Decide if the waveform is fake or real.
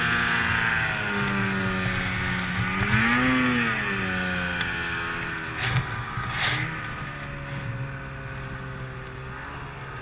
real